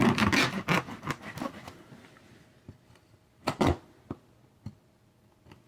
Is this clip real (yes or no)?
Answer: yes